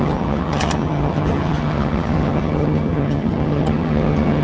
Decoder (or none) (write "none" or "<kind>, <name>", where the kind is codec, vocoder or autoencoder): vocoder, HiFi-GAN